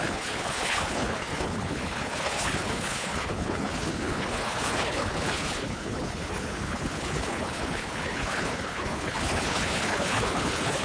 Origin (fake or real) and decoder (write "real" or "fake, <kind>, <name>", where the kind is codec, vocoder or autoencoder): fake, codec, HILCodec